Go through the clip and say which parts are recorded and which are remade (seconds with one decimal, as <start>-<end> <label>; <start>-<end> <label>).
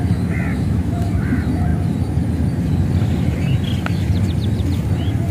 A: 0.0-0.5 recorded; 0.5-1.1 remade; 1.1-5.3 recorded